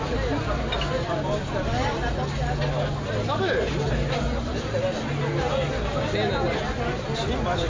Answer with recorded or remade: recorded